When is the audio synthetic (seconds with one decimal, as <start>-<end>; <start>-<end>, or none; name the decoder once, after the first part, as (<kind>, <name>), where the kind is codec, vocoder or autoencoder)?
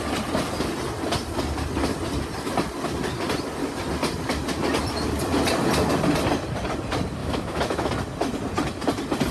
7.2-7.9 (autoencoder, DAC-VAE)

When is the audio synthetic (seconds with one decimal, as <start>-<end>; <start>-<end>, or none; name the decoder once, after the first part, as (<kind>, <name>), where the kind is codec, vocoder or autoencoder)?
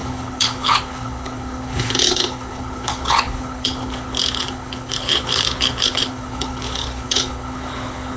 0.0-8.2 (codec, HILCodec)